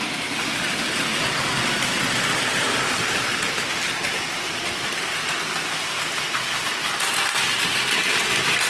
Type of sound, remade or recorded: recorded